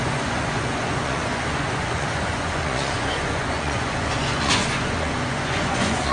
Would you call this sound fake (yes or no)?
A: yes